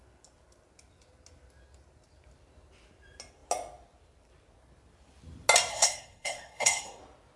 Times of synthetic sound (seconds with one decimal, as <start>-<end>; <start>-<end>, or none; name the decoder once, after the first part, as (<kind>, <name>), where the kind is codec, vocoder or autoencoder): 5.7-7.0 (codec, SNAC)